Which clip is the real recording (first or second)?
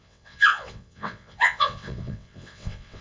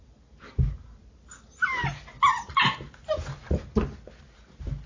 second